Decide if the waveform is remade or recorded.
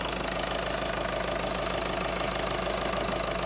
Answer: recorded